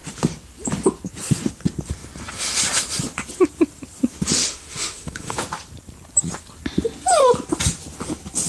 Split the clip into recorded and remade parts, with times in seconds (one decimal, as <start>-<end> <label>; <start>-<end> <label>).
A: 0.0-4.5 recorded; 4.5-5.4 remade; 5.4-8.5 recorded

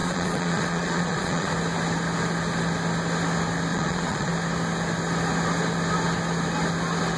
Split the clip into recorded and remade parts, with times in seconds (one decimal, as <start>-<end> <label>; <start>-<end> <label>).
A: 0.0-1.5 remade; 1.5-3.7 recorded; 3.7-4.3 remade; 4.3-7.2 recorded